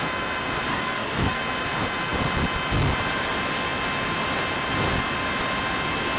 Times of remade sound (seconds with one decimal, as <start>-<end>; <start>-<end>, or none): 0.7-1.4